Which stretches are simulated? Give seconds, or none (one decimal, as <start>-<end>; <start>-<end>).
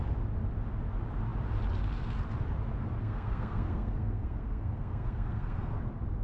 3.0-5.8